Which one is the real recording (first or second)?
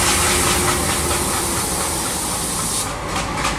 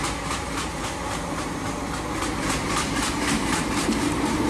first